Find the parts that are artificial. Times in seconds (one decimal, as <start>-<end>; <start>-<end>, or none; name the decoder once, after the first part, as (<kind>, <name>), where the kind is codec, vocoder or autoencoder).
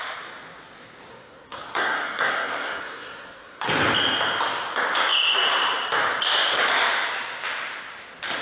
1.1-3.6 (codec, SNAC)